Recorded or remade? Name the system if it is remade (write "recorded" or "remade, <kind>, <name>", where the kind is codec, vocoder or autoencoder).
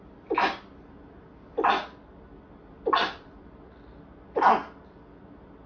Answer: recorded